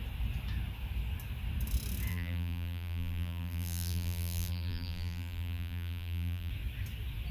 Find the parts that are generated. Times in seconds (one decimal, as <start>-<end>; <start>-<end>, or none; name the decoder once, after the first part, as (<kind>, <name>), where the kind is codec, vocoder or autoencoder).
2.1-6.5 (vocoder, BigVGAN v2)